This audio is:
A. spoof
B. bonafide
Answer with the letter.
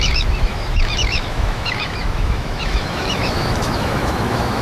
A